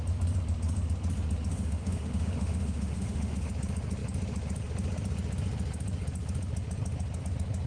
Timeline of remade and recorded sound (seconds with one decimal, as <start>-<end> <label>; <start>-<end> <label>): 0.0-1.5 recorded; 1.5-3.5 remade; 3.5-7.7 recorded